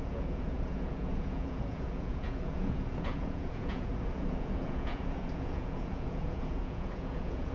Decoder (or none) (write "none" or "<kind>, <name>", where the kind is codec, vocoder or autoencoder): vocoder, Vocos